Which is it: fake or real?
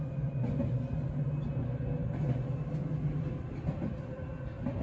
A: real